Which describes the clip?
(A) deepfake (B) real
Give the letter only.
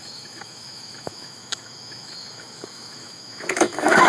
A